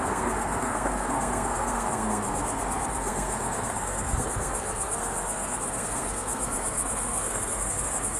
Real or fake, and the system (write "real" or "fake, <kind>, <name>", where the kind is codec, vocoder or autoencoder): fake, codec, SNAC